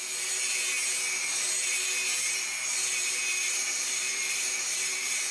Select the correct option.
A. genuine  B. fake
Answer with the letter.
B